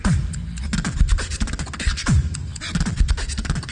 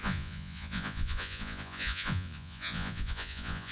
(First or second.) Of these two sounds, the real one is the first